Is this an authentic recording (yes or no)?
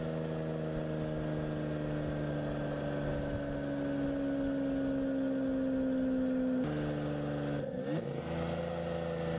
yes